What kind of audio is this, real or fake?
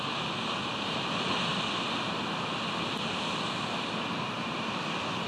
real